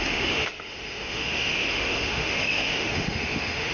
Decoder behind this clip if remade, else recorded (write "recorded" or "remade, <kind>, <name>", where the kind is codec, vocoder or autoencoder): remade, autoencoder, DAC-VAE